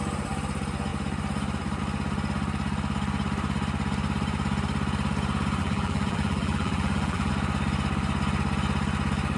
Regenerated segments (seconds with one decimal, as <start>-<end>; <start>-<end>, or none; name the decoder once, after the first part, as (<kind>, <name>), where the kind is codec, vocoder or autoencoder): 5.6-7.3 (vocoder, BigVGAN v2)